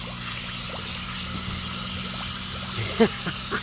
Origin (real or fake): real